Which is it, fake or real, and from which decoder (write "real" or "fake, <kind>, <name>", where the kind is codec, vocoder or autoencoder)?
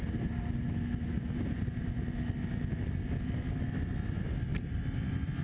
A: real